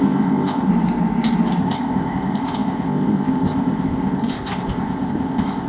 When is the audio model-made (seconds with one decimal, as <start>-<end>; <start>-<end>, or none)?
0.0-0.7; 1.6-5.7